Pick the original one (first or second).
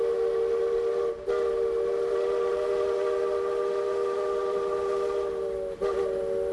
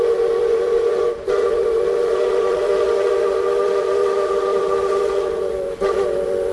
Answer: first